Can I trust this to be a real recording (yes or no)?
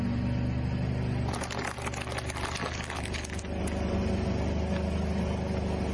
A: yes